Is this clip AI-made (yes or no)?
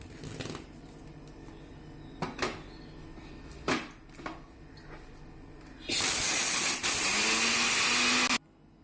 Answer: no